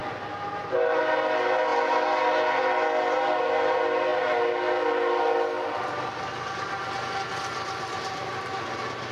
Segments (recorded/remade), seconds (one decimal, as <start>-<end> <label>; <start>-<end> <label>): 0.0-9.1 recorded